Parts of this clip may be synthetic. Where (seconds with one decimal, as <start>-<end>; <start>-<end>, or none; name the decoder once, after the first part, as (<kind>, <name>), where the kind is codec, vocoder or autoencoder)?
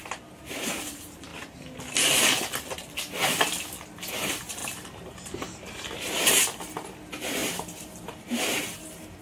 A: 0.0-1.3 (vocoder, BigVGAN v2); 4.1-9.2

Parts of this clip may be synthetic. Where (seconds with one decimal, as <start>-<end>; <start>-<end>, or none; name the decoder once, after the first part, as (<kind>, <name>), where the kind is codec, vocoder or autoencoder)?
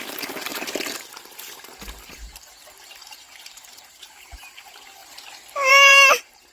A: 0.0-5.0 (vocoder, BigVGAN v2); 5.7-6.5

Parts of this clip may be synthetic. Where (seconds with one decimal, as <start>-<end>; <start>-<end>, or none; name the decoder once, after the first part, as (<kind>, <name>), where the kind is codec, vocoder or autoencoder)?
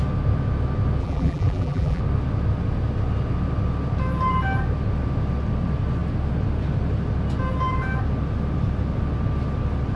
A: 1.0-2.0 (vocoder, BigVGAN v2)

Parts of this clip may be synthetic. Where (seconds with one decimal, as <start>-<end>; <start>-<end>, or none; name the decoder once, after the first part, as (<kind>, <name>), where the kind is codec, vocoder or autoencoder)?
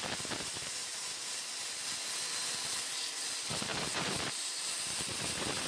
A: 3.7-5.7 (vocoder, BigVGAN v2)